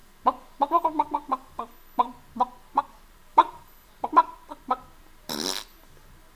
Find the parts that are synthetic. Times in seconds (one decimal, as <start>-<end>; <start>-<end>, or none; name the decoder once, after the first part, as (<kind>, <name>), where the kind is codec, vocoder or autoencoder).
2.8-6.4 (vocoder, BigVGAN v2)